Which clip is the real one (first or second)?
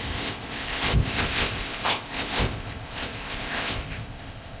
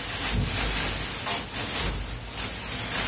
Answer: second